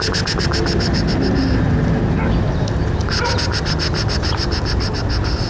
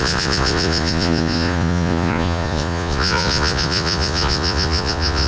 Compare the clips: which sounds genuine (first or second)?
first